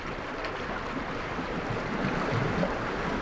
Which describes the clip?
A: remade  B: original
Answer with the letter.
B